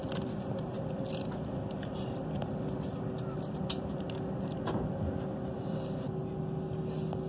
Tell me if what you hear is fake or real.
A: real